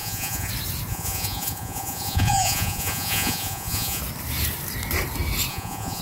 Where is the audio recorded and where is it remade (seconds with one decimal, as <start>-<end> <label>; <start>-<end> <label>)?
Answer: 0.0-0.5 remade; 0.5-0.9 recorded; 0.9-4.0 remade; 4.0-5.5 recorded; 5.5-6.0 remade